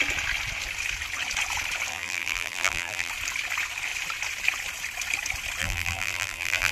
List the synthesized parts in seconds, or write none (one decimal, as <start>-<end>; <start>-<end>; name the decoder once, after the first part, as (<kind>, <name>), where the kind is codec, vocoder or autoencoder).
1.9-3.1 (vocoder, BigVGAN v2); 5.6-6.7